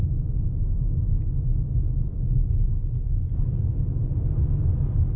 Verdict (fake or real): real